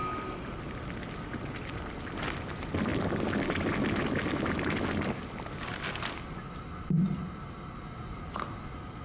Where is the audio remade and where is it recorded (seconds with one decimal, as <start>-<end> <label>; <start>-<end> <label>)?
0.0-9.0 recorded